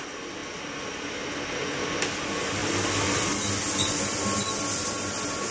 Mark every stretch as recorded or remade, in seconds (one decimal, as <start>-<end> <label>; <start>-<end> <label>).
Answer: 0.0-5.5 recorded